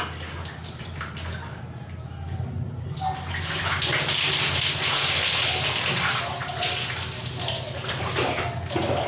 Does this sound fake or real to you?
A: real